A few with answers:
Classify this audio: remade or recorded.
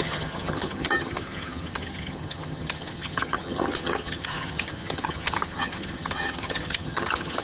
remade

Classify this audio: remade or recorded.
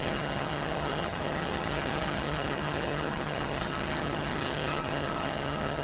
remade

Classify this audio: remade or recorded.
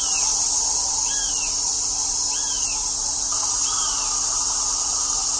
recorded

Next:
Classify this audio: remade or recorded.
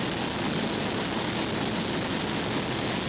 recorded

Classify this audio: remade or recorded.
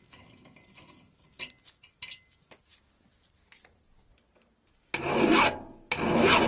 recorded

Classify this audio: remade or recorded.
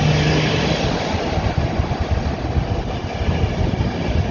recorded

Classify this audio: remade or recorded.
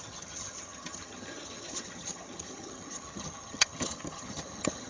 remade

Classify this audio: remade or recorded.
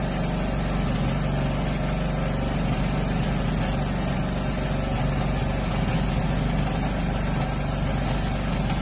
recorded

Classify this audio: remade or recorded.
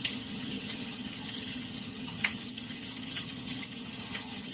remade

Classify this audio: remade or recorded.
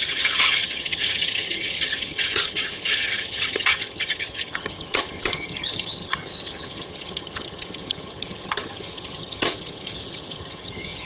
remade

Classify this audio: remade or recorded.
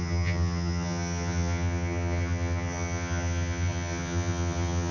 remade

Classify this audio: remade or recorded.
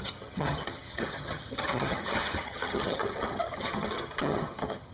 remade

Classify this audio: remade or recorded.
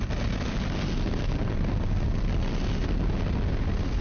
recorded